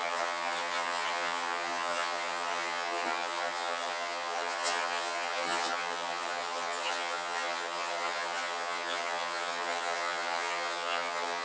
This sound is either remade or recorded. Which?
remade